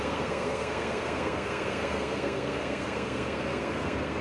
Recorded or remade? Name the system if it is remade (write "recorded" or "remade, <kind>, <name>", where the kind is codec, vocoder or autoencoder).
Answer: remade, codec, SNAC